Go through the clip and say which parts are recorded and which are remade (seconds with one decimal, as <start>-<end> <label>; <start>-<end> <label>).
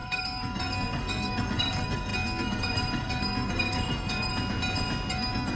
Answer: 0.0-4.3 remade; 4.3-5.1 recorded; 5.1-5.6 remade